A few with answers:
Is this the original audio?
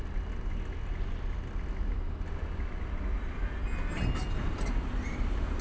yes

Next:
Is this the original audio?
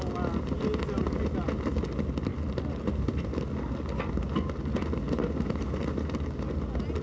yes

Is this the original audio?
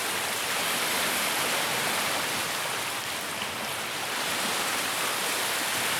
no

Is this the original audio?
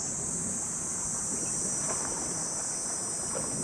yes